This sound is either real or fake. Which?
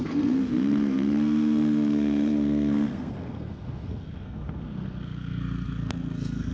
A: fake